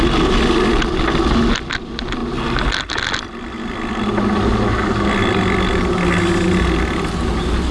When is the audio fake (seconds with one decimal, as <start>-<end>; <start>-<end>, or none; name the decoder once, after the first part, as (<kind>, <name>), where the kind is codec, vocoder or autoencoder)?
none